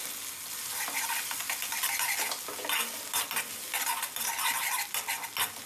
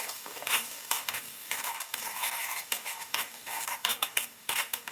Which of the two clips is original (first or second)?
first